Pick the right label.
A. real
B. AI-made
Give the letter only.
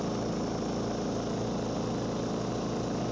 A